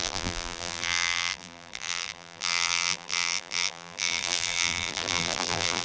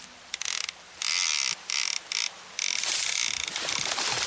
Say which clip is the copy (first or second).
first